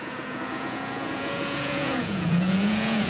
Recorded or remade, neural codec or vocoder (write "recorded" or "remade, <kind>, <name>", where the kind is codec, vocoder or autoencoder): remade, vocoder, Vocos